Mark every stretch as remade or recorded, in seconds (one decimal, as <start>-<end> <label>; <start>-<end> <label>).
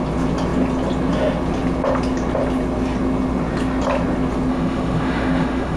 0.0-4.5 recorded; 4.5-5.8 remade